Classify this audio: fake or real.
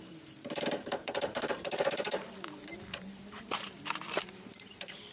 fake